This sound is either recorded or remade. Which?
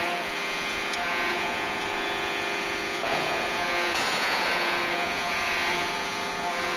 remade